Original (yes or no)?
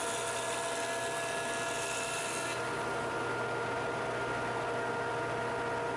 yes